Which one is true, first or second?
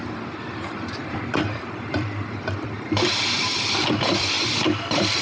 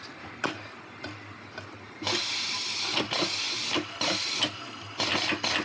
second